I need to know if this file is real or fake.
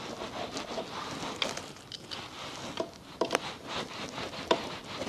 real